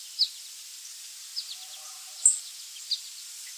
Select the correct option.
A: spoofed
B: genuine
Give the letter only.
B